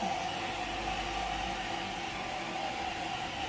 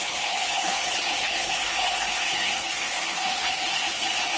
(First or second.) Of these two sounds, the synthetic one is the second